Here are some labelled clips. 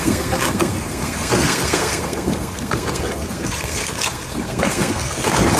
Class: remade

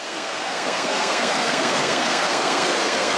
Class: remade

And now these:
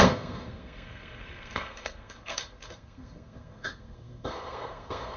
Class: remade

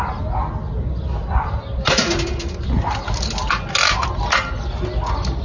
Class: recorded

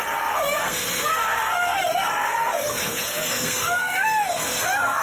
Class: remade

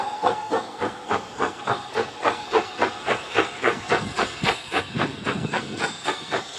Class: remade